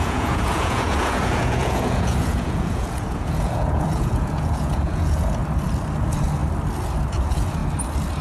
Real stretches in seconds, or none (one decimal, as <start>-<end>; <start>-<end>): 5.4-6.0; 6.4-7.1; 7.6-8.2